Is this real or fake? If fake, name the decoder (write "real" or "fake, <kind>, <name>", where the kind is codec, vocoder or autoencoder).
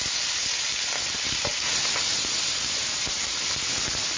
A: real